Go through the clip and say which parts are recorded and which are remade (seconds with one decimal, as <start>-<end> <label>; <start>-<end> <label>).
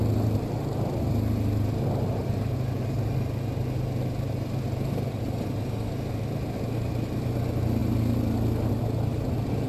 0.0-9.7 recorded